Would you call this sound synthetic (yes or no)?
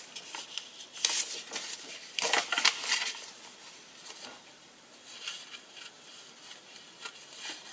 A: no